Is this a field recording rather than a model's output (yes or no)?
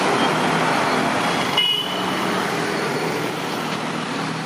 yes